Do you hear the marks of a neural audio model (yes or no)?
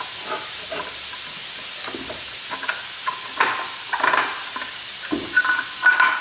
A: no